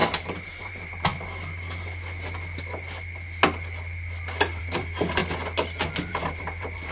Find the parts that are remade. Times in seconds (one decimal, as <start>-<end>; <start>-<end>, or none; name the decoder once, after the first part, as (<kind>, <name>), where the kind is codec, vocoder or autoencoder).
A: 0.0-1.1 (vocoder, BigVGAN v2); 4.6-5.2; 6.1-6.9